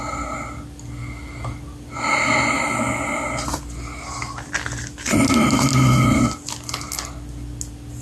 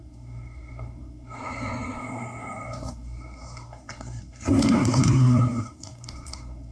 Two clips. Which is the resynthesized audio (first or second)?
second